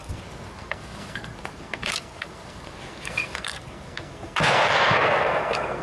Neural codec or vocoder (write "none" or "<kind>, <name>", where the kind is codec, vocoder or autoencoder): codec, SNAC